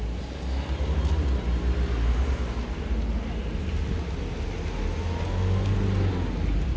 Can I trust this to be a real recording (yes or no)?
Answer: yes